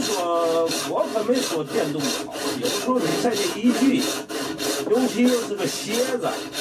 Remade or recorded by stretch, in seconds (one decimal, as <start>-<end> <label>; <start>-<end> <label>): 0.0-3.1 recorded; 3.1-4.3 remade; 4.3-6.6 recorded